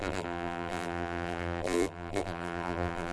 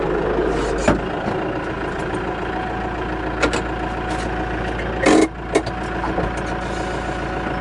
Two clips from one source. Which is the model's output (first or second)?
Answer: first